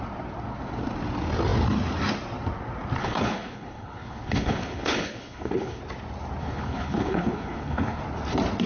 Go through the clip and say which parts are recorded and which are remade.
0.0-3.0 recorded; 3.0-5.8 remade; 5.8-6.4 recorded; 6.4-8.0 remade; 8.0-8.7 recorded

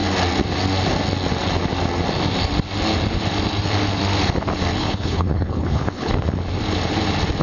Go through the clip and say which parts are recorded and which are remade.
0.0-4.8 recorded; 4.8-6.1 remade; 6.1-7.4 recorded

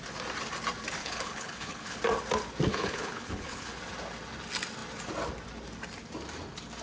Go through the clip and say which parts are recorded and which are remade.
0.0-1.0 recorded; 1.0-2.0 remade; 2.0-2.7 recorded; 2.7-3.8 remade; 3.8-6.8 recorded

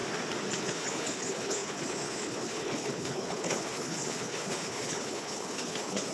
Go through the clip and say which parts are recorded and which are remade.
0.0-0.6 recorded; 0.6-6.1 remade